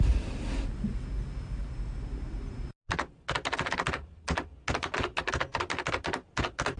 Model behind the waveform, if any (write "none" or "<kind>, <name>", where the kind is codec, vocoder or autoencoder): none